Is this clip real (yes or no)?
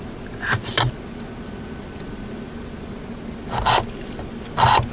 yes